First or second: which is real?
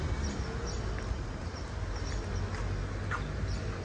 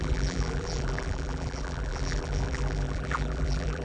first